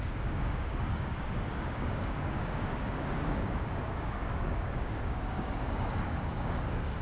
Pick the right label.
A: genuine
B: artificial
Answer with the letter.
B